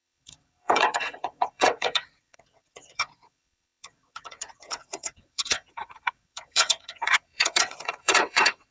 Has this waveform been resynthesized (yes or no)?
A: yes